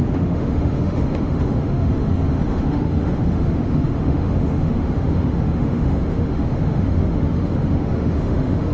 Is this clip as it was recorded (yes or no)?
no